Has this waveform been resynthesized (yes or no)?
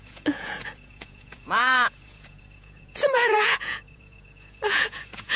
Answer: yes